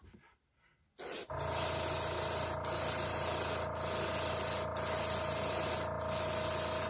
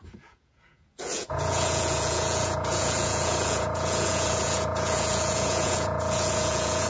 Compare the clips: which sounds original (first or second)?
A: first